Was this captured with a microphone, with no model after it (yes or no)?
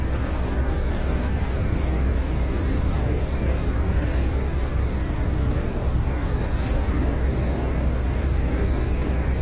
no